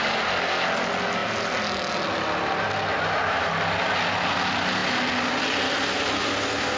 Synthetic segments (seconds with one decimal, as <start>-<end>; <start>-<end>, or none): none